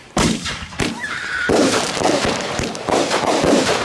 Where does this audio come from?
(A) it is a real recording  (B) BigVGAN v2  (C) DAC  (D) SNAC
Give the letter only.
B